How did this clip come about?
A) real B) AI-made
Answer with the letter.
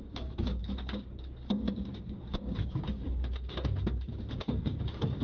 B